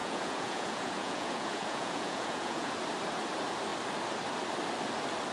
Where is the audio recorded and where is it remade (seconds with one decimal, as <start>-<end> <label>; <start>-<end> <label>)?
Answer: 0.0-2.7 remade; 2.7-5.3 recorded